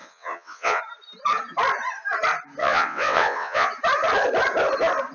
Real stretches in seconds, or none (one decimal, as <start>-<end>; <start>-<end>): 0.8-2.6; 3.7-5.1